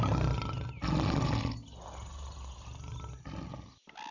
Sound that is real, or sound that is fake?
real